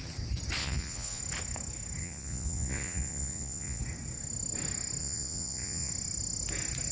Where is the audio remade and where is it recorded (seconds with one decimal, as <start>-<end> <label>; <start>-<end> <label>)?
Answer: 0.0-0.6 recorded; 0.6-1.2 remade; 1.2-2.0 recorded; 2.0-3.8 remade; 3.8-5.0 recorded; 5.0-5.9 remade; 5.9-6.9 recorded